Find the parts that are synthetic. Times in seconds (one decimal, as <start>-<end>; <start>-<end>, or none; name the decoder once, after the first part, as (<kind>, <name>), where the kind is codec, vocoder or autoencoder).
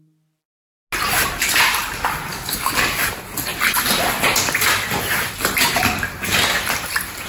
2.3-2.8 (codec, DAC)